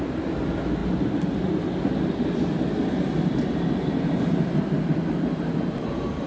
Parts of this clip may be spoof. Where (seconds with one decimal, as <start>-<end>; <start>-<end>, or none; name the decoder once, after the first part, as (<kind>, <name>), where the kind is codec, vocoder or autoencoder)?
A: 0.8-1.7 (vocoder, BigVGAN v2)